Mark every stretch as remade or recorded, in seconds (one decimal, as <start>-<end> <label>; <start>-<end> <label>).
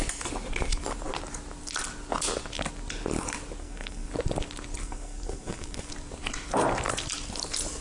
0.0-3.6 recorded; 3.6-4.1 remade; 4.1-4.8 recorded; 4.8-5.9 remade; 5.9-7.8 recorded